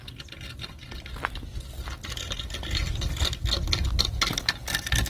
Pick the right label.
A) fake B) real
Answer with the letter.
B